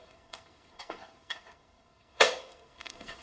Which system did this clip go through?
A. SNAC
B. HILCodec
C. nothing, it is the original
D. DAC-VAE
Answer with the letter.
A